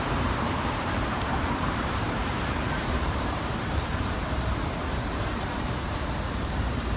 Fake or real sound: fake